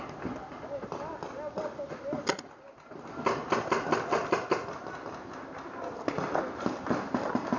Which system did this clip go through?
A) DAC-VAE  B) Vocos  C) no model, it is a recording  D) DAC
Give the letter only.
C